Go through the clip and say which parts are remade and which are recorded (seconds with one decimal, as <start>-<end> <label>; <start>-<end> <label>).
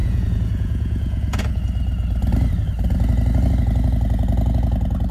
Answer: 0.0-1.6 remade; 1.6-5.1 recorded